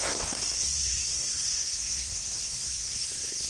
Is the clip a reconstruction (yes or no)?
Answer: yes